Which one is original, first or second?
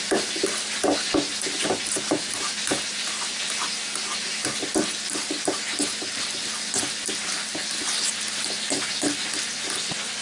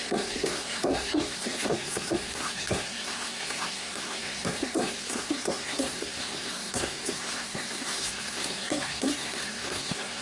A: first